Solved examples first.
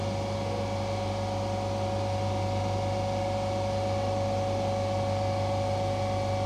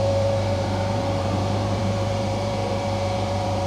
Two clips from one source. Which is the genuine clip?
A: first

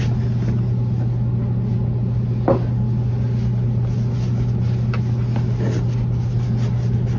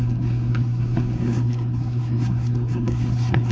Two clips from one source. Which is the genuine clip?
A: first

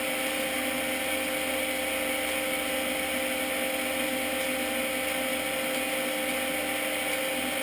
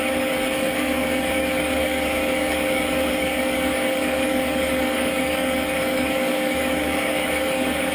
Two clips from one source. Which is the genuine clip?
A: first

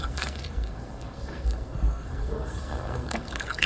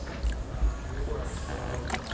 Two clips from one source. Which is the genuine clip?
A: second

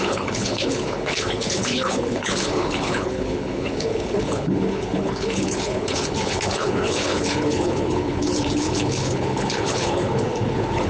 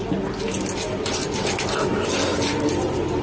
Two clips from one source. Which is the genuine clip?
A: second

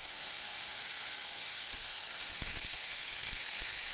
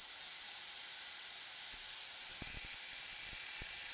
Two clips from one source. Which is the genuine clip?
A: second